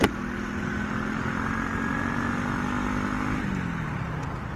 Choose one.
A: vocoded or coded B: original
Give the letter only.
B